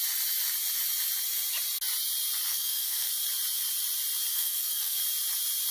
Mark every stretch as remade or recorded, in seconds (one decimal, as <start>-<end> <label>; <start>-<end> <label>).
0.0-2.5 recorded; 2.5-3.1 remade; 3.1-4.3 recorded; 4.3-5.0 remade; 5.0-5.7 recorded